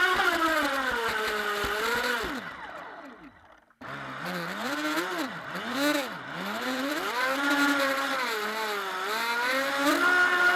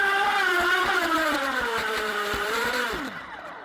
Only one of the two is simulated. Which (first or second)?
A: second